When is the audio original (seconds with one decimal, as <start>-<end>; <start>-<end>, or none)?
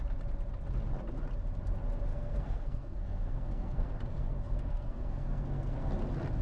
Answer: 0.0-2.1; 5.9-6.4